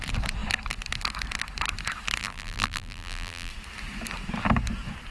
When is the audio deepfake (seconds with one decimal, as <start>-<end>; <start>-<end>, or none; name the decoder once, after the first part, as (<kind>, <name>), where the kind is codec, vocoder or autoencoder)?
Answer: 2.2-3.5 (vocoder, BigVGAN v2)